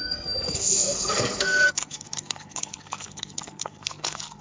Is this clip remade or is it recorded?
remade